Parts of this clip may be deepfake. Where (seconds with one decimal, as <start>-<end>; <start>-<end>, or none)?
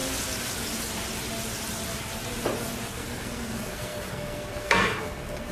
2.9-5.5